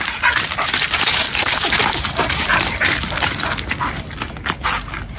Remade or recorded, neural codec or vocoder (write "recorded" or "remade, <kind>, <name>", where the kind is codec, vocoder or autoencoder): recorded